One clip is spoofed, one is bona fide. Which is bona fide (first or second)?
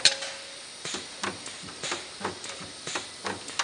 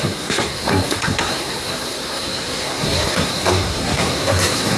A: first